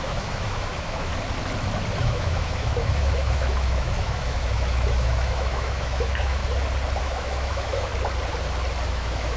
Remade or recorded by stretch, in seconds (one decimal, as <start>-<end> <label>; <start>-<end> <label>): 0.0-1.1 remade; 1.1-2.0 recorded; 2.0-6.4 remade; 6.4-7.0 recorded; 7.0-7.9 remade; 7.9-8.9 recorded; 8.9-9.4 remade